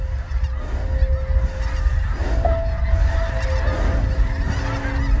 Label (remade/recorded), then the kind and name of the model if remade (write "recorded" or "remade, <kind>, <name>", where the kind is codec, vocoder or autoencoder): recorded